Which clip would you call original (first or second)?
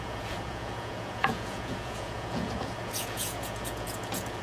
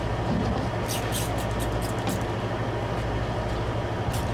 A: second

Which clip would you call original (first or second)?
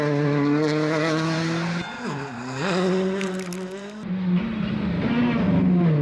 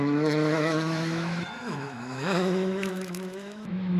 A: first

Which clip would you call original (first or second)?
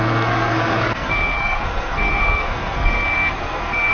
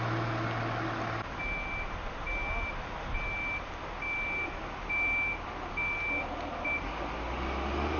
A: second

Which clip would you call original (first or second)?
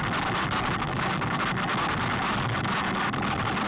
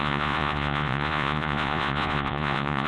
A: first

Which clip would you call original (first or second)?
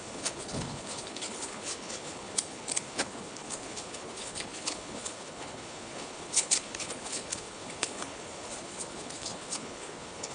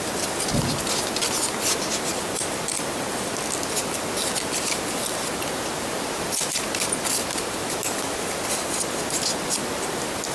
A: second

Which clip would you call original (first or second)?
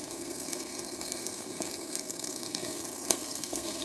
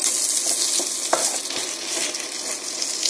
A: second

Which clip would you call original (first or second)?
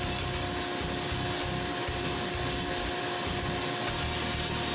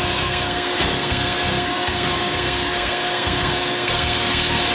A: first